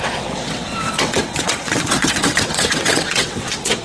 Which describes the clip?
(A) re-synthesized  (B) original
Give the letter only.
A